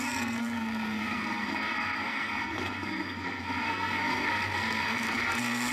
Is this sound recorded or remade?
remade